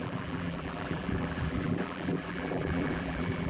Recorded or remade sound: remade